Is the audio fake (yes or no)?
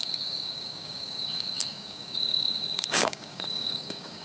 yes